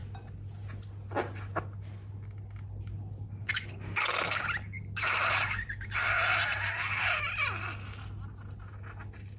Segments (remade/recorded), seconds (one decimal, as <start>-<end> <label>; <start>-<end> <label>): 0.0-9.4 recorded